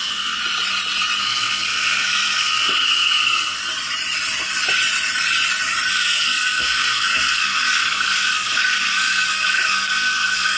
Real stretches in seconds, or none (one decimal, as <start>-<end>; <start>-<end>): 0.4-1.2; 3.6-5.9